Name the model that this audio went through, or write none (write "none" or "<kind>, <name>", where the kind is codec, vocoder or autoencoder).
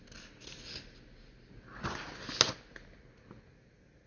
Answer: none